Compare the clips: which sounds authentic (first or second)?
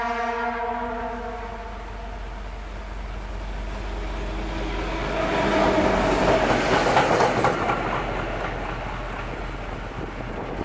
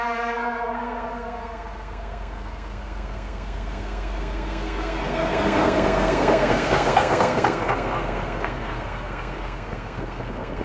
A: first